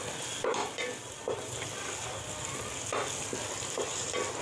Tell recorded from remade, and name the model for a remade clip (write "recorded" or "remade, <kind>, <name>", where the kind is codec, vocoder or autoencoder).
recorded